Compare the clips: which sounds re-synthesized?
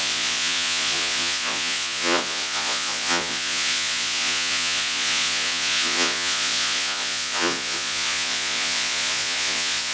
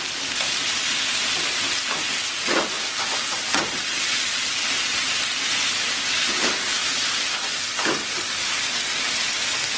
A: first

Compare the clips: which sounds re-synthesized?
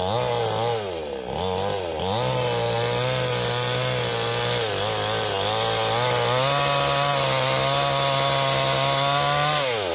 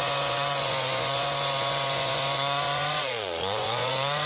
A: second